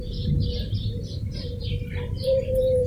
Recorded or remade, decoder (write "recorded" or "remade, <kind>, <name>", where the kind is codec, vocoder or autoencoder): remade, vocoder, BigVGAN v2